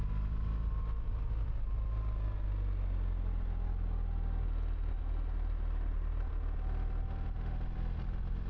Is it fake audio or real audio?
real